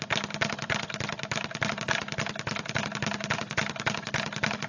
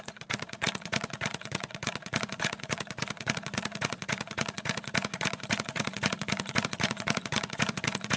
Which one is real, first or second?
first